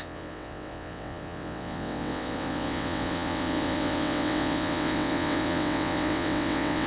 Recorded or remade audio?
remade